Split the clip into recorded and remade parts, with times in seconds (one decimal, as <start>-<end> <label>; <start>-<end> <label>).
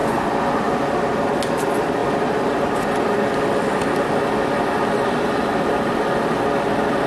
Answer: 0.0-0.6 remade; 0.6-7.1 recorded